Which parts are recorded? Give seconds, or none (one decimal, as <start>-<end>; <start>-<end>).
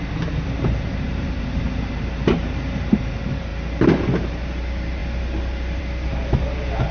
3.5-4.2